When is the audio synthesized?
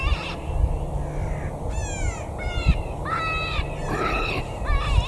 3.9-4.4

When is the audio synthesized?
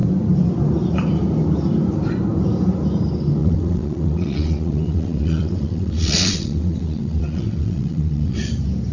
3.4-8.5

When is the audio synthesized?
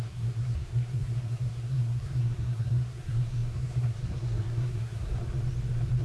0.0-5.2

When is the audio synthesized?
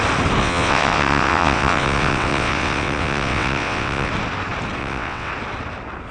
0.4-4.1; 4.8-5.3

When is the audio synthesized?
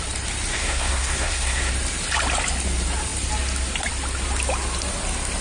0.5-1.7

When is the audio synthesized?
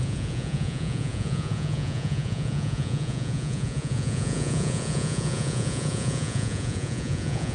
0.0-7.5